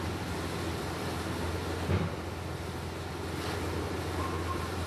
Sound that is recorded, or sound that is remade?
recorded